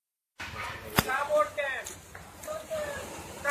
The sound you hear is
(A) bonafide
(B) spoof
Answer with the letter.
A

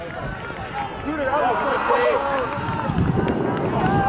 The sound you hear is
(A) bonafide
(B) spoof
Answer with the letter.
A